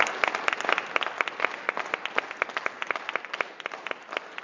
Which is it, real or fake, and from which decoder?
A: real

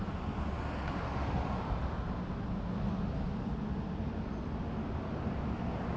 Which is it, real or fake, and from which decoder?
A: real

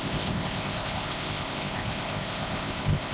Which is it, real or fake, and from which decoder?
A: fake, codec, ZipCodec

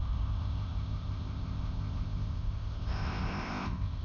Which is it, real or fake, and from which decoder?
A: fake, codec, ZipCodec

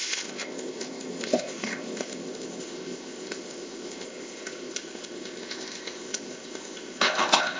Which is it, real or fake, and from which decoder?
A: fake, codec, ZipCodec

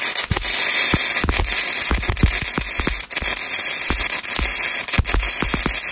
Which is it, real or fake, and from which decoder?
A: real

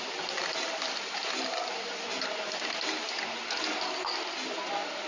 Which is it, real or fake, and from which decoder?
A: real